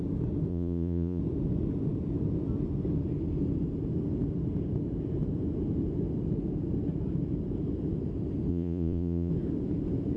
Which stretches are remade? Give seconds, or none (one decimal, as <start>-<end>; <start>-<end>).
0.5-1.2; 8.5-9.3